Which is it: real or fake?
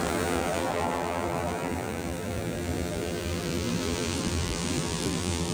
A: fake